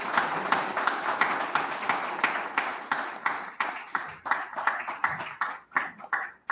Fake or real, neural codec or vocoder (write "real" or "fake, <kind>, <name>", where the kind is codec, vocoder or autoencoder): real